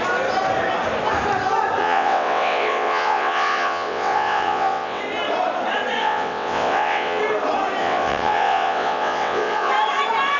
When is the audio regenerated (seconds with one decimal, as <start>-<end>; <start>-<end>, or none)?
1.8-5.0; 6.0-7.2; 7.8-9.7